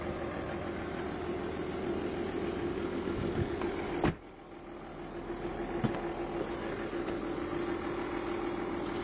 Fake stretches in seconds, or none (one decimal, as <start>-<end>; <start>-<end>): 2.7-3.5